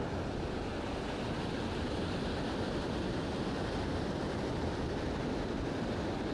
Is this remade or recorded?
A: recorded